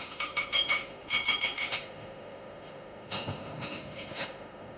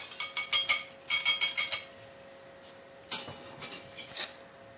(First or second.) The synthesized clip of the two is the first